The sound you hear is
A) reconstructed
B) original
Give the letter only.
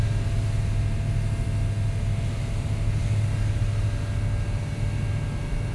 B